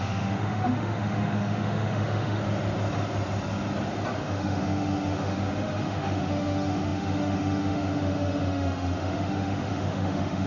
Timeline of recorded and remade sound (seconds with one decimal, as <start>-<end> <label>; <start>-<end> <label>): 0.0-2.4 remade; 2.4-4.2 recorded; 4.2-10.5 remade